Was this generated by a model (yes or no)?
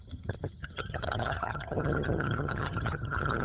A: yes